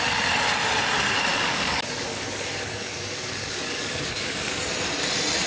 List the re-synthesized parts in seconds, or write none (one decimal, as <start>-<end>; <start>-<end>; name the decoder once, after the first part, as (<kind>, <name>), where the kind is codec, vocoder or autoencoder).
1.3-4.6 (codec, DAC)